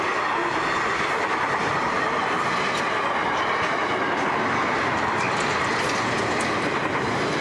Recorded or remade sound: recorded